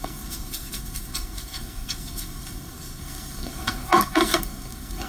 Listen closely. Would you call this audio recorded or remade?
remade